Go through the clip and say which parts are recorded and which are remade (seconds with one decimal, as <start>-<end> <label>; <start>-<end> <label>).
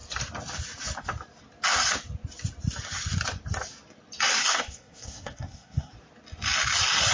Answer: 0.0-4.4 recorded; 4.4-5.9 remade; 5.9-7.1 recorded